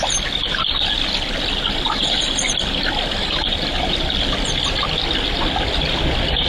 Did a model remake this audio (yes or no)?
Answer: no